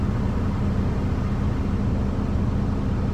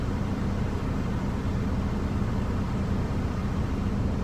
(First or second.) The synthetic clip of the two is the second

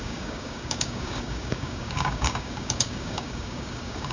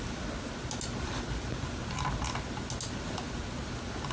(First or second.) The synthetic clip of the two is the first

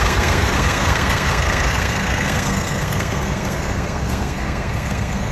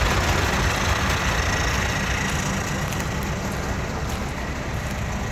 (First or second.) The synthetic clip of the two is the first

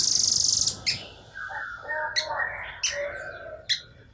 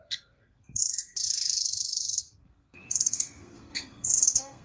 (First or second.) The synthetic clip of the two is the second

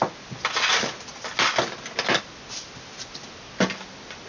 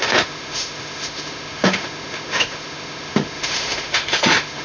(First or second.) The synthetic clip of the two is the second